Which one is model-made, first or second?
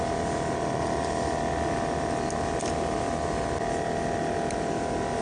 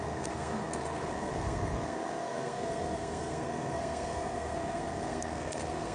second